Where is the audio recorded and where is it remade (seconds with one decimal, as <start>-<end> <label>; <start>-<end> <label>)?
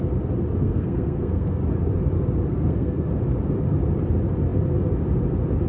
0.0-0.5 recorded; 0.5-1.6 remade; 1.6-2.5 recorded; 2.5-3.1 remade; 3.1-5.7 recorded